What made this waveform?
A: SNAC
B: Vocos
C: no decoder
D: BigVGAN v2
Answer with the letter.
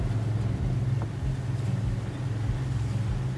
C